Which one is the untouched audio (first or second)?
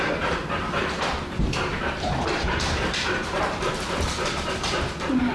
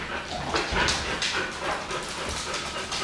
second